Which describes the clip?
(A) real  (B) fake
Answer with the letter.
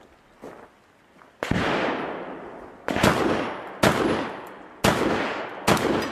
A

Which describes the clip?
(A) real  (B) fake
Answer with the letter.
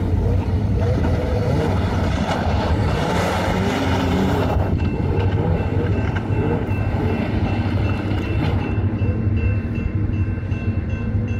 B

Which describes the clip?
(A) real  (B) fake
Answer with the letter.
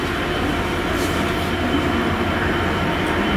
A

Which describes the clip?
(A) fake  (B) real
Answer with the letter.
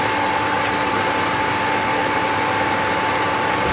B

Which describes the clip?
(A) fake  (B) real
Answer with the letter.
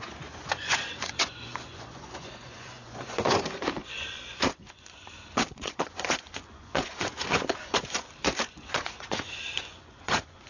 A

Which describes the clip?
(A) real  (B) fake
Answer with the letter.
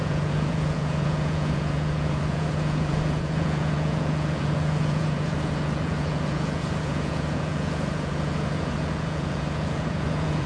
B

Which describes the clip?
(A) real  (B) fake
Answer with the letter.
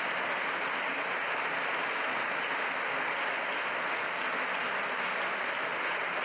A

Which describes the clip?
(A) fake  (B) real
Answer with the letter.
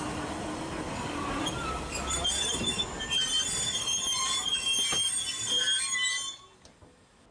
B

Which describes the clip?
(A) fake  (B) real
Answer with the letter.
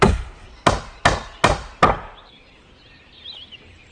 B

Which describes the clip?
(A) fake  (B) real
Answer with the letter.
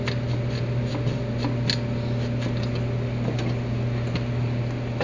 B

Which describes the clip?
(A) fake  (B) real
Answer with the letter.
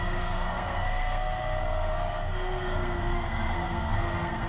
A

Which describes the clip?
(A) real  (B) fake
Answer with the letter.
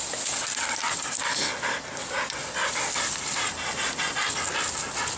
A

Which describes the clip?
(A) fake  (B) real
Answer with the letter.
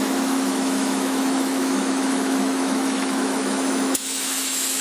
A